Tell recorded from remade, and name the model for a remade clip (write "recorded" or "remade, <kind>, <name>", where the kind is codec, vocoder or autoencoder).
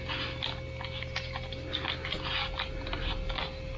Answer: recorded